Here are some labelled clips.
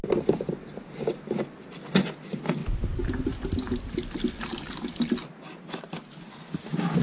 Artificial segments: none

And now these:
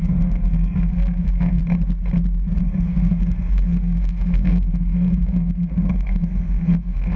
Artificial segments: 0.0-1.6 (codec, SNAC); 2.6-7.2

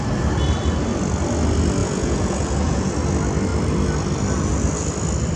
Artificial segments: 1.8-2.9 (vocoder, Vocos)

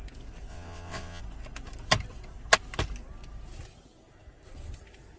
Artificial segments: 0.5-1.2 (vocoder, WaveNeXt)

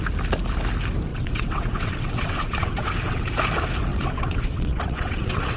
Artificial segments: 1.1-3.3 (vocoder, WaveNeXt); 3.9-5.6

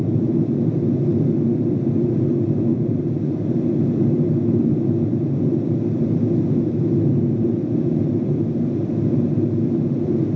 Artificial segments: 2.7-3.4 (vocoder, BigVGAN v2)

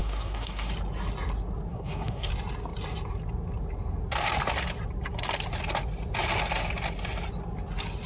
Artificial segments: 0.0-0.7 (codec, SNAC); 1.7-2.3

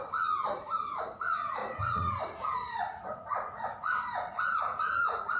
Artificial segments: 0.0-5.4 (vocoder, Vocos)